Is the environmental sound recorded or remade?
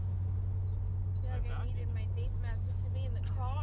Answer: recorded